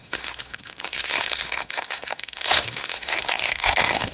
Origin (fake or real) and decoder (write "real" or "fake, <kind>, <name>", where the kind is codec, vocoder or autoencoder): fake, codec, SNAC